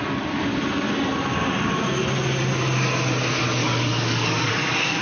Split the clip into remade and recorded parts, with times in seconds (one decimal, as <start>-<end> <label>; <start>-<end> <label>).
0.0-3.6 recorded; 3.6-5.0 remade